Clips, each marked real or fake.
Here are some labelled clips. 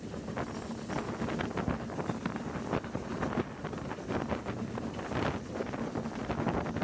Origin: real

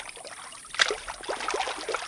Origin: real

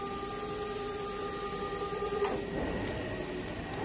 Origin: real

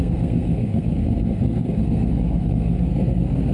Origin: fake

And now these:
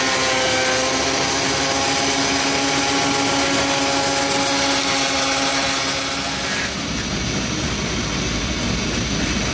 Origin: real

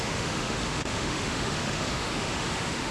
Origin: fake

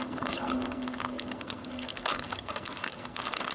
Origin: fake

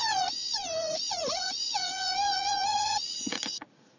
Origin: fake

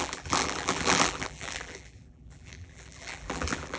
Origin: fake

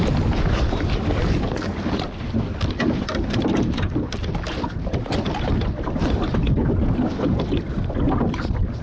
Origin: real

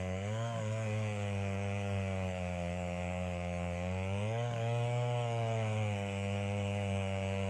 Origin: fake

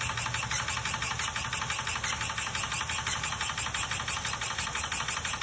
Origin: real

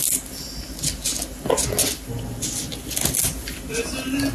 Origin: real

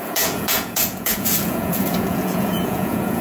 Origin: fake